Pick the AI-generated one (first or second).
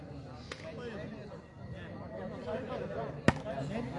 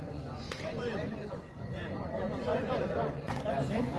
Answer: second